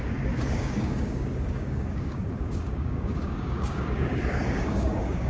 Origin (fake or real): fake